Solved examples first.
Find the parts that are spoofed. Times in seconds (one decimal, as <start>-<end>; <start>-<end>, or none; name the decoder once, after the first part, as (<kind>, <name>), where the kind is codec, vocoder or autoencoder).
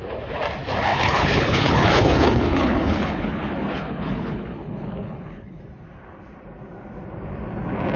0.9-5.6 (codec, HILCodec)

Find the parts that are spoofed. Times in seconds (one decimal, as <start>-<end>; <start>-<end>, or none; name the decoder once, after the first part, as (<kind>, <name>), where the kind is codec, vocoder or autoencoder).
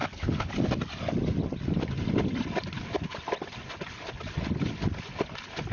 0.0-0.5 (codec, HILCodec)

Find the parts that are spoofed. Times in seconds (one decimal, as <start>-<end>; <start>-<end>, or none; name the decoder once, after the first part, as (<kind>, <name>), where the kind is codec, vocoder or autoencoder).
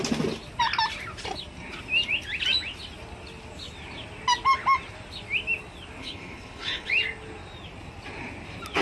6.0-6.9 (codec, HILCodec)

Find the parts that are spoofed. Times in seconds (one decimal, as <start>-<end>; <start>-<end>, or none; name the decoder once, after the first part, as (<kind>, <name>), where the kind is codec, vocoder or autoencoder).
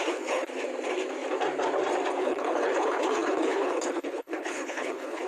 0.0-0.5 (codec, HILCodec); 2.2-5.3